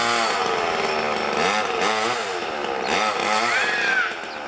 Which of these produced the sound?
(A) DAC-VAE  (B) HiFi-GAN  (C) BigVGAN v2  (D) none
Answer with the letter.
D